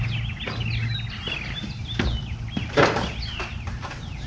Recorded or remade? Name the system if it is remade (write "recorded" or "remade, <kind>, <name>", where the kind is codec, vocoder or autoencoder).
recorded